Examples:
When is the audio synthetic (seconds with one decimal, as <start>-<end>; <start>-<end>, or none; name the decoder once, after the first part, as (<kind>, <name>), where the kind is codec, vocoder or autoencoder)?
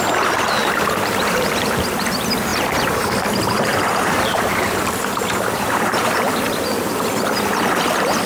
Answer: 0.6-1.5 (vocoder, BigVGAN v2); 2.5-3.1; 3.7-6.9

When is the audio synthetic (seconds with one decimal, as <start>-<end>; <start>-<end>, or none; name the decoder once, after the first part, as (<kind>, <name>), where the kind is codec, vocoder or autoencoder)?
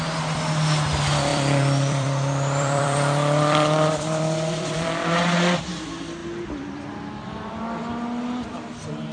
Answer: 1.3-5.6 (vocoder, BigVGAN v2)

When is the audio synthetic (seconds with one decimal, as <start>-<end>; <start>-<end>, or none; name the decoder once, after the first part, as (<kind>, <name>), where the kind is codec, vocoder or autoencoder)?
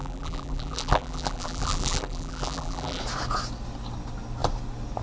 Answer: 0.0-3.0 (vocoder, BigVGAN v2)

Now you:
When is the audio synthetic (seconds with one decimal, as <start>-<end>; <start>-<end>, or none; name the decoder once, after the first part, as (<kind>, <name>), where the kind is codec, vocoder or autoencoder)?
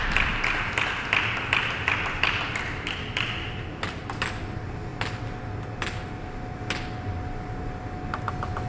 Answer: none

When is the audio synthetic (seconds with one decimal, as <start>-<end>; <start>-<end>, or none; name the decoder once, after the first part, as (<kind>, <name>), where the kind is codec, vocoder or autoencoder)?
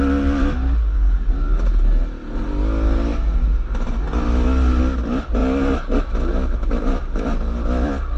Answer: none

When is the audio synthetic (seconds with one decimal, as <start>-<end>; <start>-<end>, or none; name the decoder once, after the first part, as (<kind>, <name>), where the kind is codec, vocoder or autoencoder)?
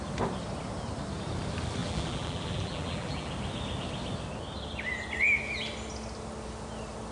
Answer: 1.8-3.3 (vocoder, BigVGAN v2)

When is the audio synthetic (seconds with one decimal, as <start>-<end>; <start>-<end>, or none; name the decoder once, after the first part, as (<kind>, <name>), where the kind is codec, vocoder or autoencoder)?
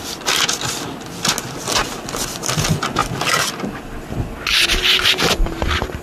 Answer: none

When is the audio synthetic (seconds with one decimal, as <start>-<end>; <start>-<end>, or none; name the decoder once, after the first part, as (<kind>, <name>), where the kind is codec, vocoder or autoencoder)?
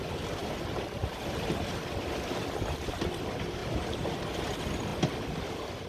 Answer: 0.4-1.5 (vocoder, BigVGAN v2); 4.9-5.9